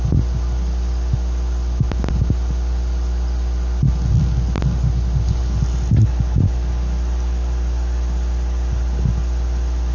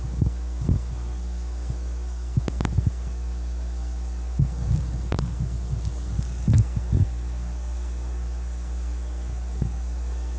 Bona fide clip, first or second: first